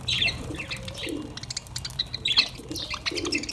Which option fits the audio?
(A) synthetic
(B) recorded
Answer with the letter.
B